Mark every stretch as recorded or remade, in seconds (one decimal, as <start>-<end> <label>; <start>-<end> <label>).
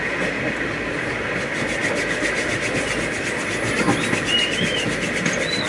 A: 0.0-5.7 recorded